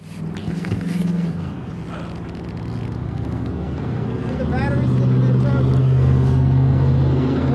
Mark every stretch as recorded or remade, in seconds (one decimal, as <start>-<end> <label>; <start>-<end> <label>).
0.0-0.4 recorded; 0.4-1.7 remade; 1.7-3.0 recorded; 3.0-4.4 remade; 4.4-5.8 recorded; 5.8-7.5 remade